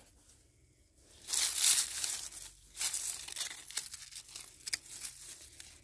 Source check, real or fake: real